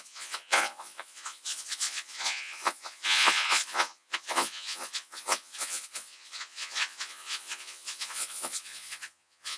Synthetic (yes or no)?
yes